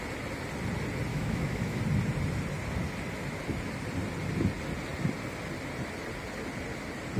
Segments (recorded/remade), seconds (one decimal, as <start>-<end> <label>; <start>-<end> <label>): 0.0-1.1 recorded; 1.1-1.8 remade; 1.8-7.2 recorded